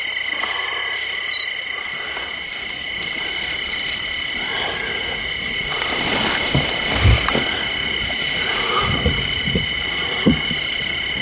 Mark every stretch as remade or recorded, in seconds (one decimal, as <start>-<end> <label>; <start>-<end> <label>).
0.0-4.5 recorded; 4.5-5.7 remade; 5.7-7.8 recorded; 7.8-10.5 remade; 10.5-11.2 recorded